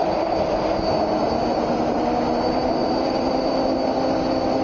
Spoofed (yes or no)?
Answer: no